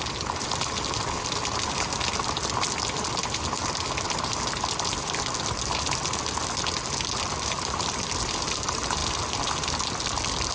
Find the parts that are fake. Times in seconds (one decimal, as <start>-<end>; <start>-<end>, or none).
none